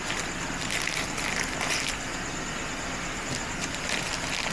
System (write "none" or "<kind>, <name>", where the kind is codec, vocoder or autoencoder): none